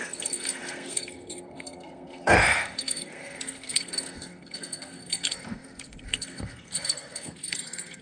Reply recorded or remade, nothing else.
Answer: remade